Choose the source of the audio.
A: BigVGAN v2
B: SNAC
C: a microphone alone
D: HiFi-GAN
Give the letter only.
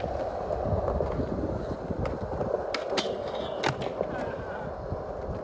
C